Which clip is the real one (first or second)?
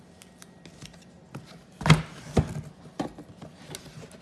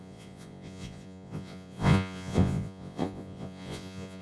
first